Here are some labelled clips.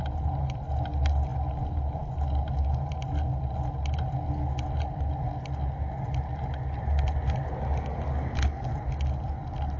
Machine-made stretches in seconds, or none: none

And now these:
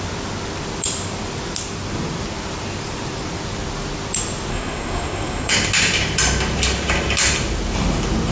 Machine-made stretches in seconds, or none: 4.5-5.5

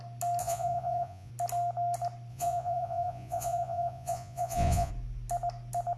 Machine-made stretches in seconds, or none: 0.4-1.3; 2.3-4.9

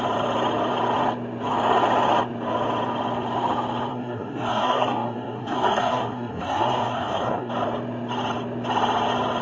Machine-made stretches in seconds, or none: 3.9-7.5

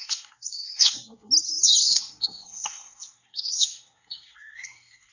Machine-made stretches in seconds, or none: 0.0-1.3; 1.8-5.1